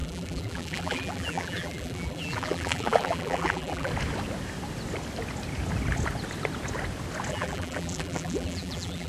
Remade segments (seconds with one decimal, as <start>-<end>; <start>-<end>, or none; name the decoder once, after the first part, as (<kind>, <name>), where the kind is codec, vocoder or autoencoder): 0.0-3.9 (vocoder, BigVGAN v2); 7.3-9.1